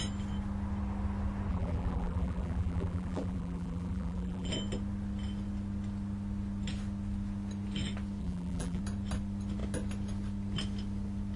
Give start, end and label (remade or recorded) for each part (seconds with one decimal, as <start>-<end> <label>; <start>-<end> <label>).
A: 0.0-1.5 recorded; 1.5-4.5 remade; 4.5-8.2 recorded; 8.2-8.8 remade; 8.8-11.4 recorded